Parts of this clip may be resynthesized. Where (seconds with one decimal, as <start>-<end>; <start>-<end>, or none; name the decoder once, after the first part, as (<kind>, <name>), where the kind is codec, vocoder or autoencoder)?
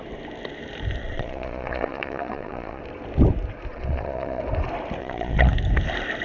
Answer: 1.0-2.8 (vocoder, Vocos); 3.7-4.4; 5.0-5.5